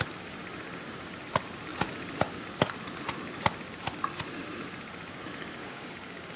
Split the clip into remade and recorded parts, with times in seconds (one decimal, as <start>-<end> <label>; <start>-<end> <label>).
0.0-5.6 recorded; 5.6-6.4 remade